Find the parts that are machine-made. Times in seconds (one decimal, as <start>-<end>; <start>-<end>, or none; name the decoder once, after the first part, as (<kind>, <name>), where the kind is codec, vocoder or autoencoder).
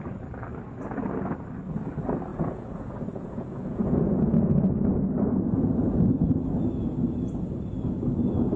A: 2.3-4.6 (vocoder, Vocos)